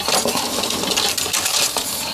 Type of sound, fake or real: real